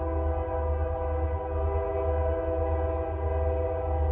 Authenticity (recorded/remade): recorded